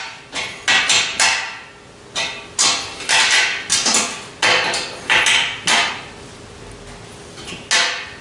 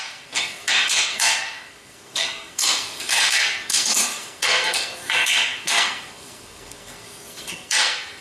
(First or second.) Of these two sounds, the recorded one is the first